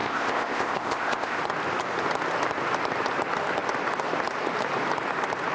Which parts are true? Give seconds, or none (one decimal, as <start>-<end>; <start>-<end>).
1.4-5.5